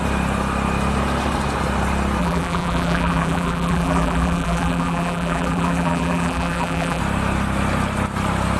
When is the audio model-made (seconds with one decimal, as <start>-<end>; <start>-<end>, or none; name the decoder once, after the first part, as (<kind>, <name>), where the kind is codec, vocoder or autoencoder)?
2.2-7.0 (vocoder, BigVGAN v2)